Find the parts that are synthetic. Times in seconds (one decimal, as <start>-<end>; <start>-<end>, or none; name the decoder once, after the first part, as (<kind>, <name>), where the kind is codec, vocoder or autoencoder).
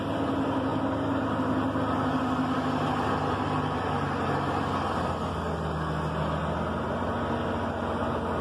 none